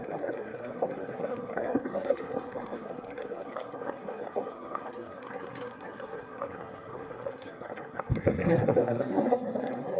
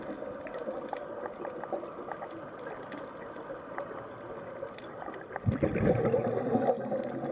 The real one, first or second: second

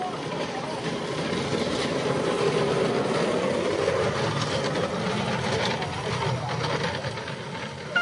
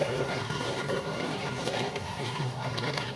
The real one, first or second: first